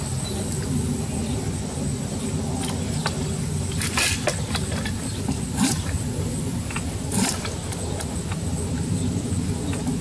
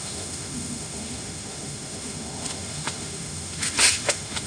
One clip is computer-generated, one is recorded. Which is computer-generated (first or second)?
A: second